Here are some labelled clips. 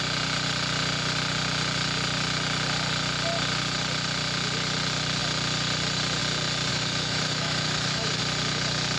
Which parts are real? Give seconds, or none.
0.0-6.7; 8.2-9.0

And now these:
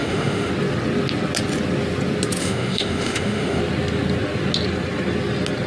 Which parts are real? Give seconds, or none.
0.5-2.4; 3.6-5.7

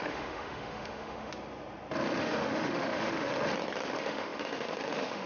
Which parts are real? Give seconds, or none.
1.3-2.2; 3.3-3.9

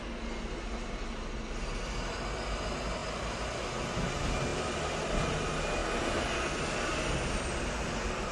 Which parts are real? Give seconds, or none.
0.0-8.3

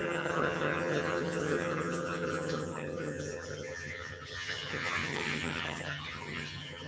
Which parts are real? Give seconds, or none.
none

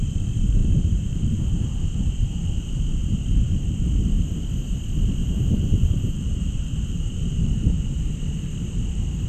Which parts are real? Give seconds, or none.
0.0-0.6; 3.8-5.2; 8.1-9.3

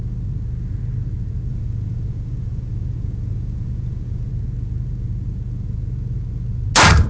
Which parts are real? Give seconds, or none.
0.0-1.5; 4.3-7.1

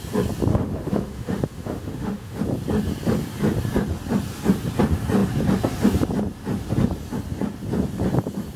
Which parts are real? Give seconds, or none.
0.0-0.5; 2.4-8.6